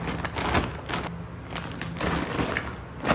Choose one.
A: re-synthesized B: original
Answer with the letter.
B